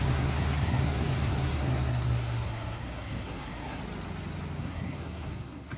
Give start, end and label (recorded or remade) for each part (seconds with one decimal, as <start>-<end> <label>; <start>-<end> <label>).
0.0-3.8 remade; 3.8-4.6 recorded; 4.6-5.8 remade